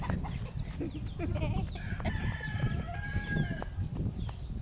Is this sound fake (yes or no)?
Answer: no